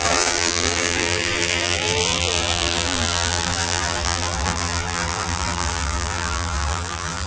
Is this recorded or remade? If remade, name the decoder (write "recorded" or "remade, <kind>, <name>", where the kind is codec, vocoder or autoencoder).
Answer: remade, vocoder, BigVGAN v2